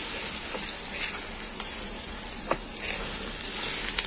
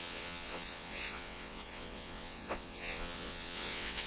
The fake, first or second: second